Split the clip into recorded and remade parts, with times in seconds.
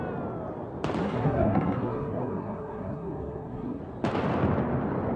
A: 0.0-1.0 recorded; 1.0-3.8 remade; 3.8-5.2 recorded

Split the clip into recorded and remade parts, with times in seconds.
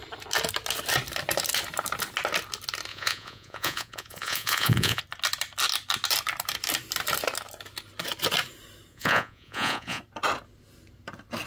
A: 0.0-2.9 recorded; 2.9-5.0 remade; 5.0-8.9 recorded; 8.9-10.0 remade; 10.0-11.5 recorded